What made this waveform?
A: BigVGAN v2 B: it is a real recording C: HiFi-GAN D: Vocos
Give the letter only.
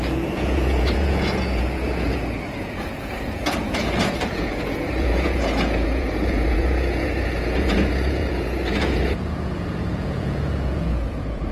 D